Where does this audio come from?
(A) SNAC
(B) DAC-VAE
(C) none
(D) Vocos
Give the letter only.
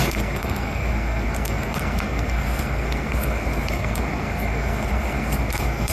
A